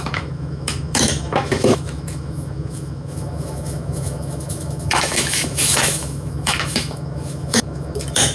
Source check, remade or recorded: remade